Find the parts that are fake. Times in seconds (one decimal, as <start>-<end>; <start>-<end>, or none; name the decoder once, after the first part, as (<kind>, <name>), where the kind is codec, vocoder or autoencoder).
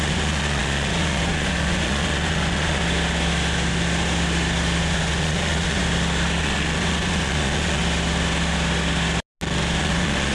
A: 0.0-2.8 (vocoder, Vocos); 4.8-5.8; 6.4-7.8; 9.8-10.3